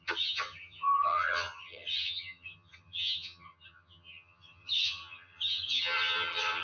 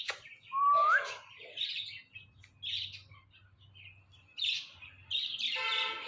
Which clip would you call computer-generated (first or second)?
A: first